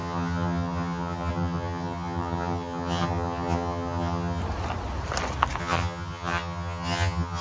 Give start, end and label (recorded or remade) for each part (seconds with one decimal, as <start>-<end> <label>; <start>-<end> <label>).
0.0-4.4 remade; 4.4-5.6 recorded; 5.6-7.4 remade